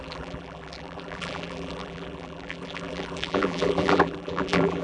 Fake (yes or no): yes